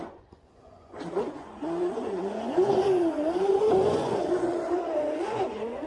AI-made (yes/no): yes